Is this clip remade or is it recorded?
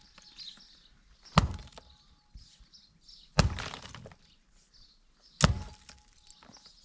recorded